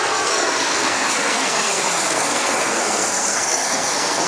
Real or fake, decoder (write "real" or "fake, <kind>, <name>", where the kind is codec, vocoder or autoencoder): fake, codec, SNAC